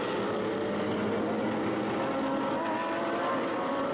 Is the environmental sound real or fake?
real